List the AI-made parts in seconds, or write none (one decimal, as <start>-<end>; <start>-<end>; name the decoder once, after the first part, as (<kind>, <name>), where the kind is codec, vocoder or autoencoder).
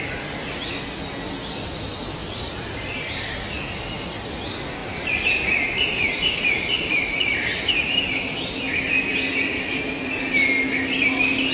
2.2-3.1 (vocoder, BigVGAN v2); 4.8-8.6; 9.3-10.5